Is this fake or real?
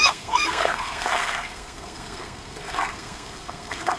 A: fake